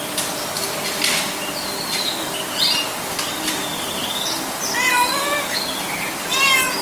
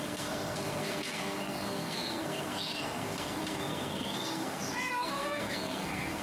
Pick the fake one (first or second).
second